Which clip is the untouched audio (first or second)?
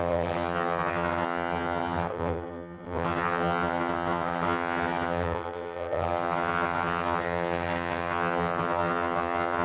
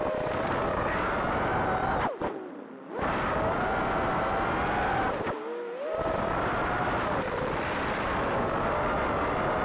second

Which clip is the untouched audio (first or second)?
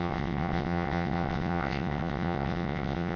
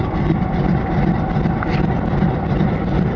second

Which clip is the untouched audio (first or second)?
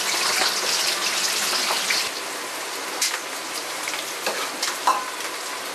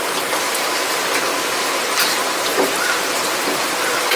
first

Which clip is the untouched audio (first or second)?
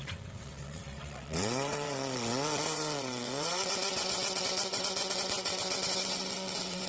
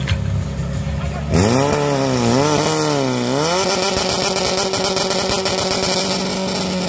second